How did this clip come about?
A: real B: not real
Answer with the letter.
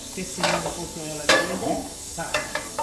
B